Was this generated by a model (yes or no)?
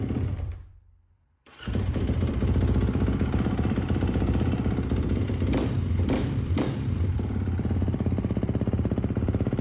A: yes